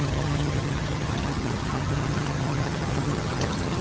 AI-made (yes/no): yes